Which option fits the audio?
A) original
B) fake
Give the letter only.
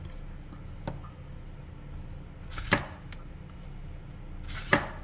A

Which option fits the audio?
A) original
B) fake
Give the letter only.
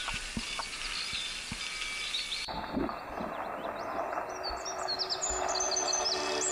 A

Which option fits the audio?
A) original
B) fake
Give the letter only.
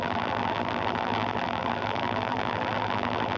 B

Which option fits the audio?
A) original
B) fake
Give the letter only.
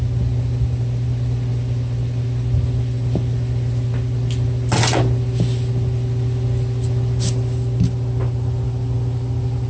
A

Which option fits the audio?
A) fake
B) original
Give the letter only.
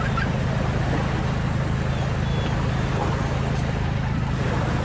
B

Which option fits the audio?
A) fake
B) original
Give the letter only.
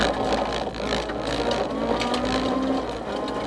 B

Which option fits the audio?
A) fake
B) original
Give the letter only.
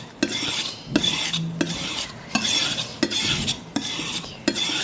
B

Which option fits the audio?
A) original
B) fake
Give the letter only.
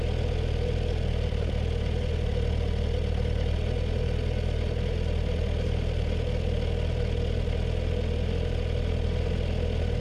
A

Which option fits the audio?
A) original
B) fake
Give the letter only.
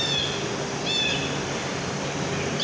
A